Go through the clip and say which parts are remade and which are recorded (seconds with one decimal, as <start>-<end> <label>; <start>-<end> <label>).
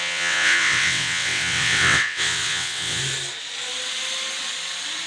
0.0-3.0 remade; 3.0-5.1 recorded